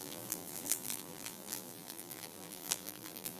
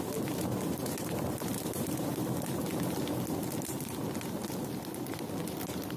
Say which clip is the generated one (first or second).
first